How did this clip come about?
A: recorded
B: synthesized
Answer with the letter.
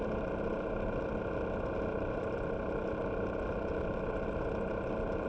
A